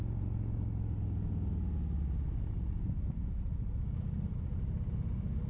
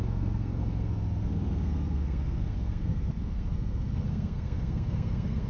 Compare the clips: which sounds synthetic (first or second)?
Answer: second